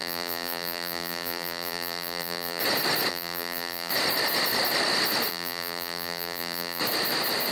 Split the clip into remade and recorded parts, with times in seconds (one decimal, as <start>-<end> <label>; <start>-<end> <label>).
0.0-2.6 remade; 2.6-3.1 recorded; 3.1-3.9 remade; 3.9-5.3 recorded; 5.3-6.8 remade; 6.8-7.5 recorded